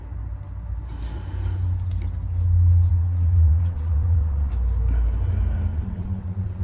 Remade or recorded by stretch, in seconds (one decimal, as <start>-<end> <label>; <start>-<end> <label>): 0.0-2.9 recorded; 2.9-4.5 remade; 4.5-5.7 recorded; 5.7-6.6 remade